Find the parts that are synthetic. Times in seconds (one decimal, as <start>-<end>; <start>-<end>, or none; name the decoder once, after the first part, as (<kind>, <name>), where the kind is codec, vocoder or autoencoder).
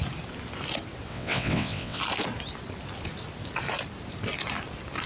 1.1-2.0 (vocoder, WaveNeXt)